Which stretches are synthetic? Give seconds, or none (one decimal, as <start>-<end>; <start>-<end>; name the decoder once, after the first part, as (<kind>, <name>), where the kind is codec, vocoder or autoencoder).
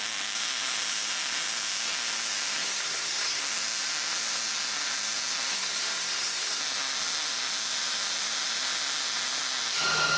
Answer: 2.6-3.4 (codec, SNAC); 5.5-6.6